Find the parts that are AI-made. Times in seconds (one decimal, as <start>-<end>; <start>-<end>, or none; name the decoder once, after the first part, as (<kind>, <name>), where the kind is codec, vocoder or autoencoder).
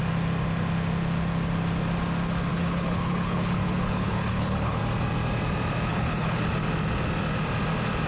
2.5-4.8 (codec, HILCodec); 5.9-6.5